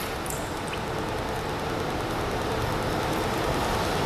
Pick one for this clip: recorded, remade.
recorded